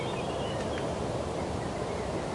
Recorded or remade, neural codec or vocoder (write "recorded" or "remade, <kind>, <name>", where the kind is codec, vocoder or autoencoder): recorded